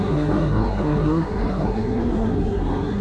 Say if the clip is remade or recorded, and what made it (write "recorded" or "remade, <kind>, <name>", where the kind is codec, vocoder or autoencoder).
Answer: remade, codec, SNAC